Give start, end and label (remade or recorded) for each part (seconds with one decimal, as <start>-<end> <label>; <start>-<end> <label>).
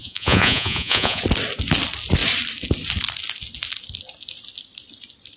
0.0-1.2 remade; 1.2-5.4 recorded